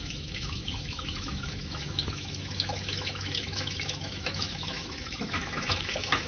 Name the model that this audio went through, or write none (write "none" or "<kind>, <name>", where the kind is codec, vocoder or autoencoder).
autoencoder, DAC-VAE